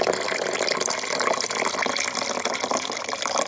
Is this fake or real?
fake